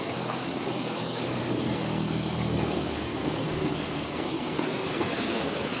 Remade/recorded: remade